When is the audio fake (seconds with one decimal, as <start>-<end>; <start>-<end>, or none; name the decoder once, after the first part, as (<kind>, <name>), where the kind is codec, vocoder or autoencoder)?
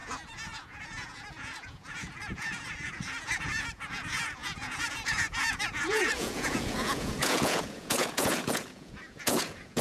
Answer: 0.0-9.8 (vocoder, Vocos)